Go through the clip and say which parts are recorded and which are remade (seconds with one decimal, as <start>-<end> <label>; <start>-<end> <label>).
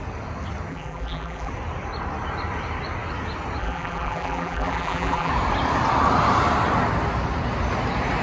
0.0-0.7 recorded; 0.7-1.5 remade; 1.5-3.6 recorded; 3.6-5.3 remade; 5.3-8.2 recorded